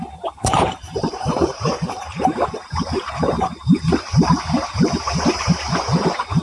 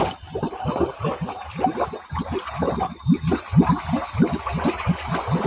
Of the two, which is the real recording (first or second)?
second